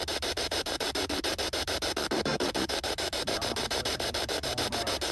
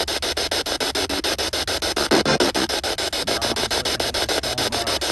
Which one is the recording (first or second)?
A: second